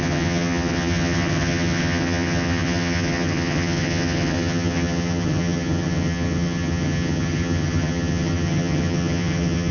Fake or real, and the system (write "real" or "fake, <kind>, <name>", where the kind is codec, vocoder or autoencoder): fake, vocoder, HiFi-GAN